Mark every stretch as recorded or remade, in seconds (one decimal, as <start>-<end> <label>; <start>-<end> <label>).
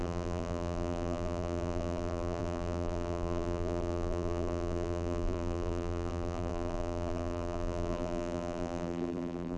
0.0-9.6 remade